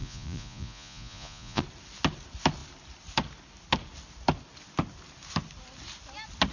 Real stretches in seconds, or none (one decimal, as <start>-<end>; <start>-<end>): 1.6-6.5